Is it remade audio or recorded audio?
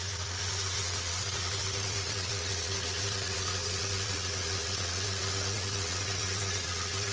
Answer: remade